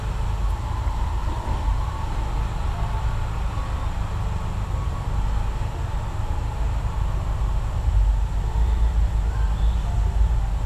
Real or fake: real